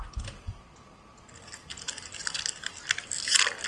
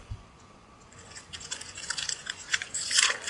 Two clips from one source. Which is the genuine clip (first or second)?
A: first